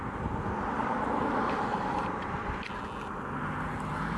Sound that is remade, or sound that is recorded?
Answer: recorded